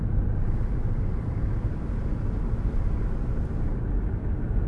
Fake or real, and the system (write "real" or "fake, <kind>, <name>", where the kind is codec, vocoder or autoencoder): real